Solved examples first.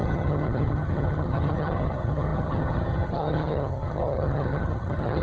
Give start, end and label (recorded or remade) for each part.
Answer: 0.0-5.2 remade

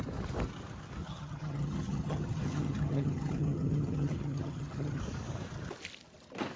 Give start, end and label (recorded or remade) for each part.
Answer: 0.0-1.0 recorded; 1.0-5.0 remade; 5.0-6.6 recorded

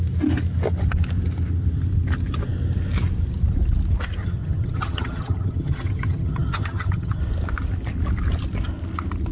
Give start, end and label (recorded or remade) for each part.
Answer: 0.0-4.2 recorded; 4.2-7.2 remade; 7.2-9.3 recorded

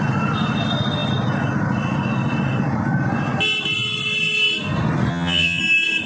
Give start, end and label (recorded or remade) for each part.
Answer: 0.0-5.1 recorded; 5.1-5.6 remade; 5.6-6.1 recorded

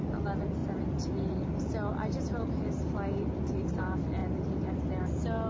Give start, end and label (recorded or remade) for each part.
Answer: 0.0-5.5 recorded

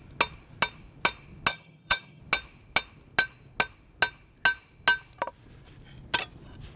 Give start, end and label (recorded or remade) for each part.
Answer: 0.0-1.5 recorded; 1.5-2.2 remade; 2.2-6.8 recorded

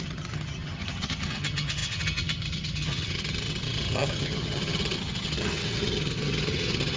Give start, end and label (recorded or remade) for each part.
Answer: 0.0-7.0 remade